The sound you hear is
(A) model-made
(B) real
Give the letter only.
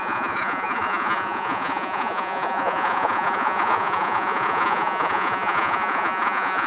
A